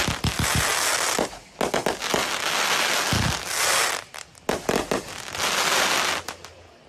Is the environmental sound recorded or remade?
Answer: recorded